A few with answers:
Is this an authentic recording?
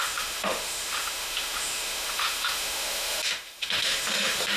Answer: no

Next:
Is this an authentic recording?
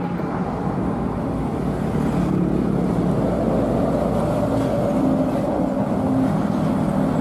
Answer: yes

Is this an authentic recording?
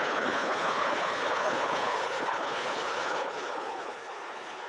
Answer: no